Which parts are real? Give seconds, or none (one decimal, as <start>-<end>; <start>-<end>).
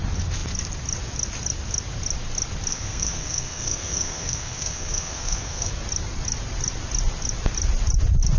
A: 0.0-2.7; 5.7-8.4